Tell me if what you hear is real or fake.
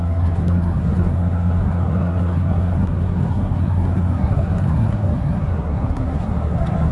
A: fake